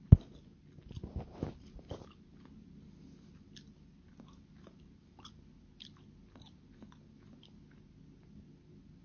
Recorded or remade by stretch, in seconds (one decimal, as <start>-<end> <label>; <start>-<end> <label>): 0.0-9.0 recorded